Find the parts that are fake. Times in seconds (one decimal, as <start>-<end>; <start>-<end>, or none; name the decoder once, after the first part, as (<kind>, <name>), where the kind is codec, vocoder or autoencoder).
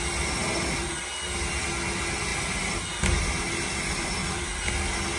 none